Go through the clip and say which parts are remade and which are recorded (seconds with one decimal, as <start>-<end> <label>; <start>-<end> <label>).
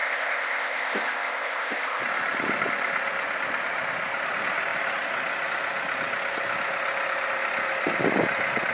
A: 0.0-2.0 remade; 2.0-8.7 recorded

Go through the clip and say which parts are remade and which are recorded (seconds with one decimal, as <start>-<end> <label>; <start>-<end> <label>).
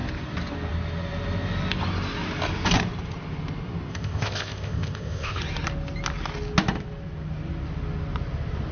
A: 0.0-3.9 recorded; 3.9-5.4 remade; 5.4-8.7 recorded